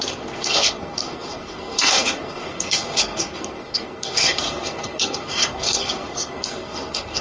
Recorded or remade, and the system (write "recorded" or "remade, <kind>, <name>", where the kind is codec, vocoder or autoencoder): remade, codec, SNAC